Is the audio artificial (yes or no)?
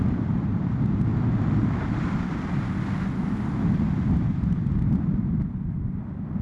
no